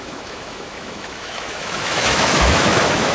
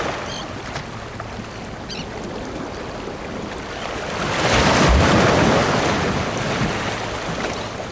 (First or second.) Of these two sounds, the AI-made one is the first